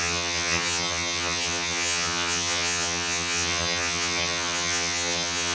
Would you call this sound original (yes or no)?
no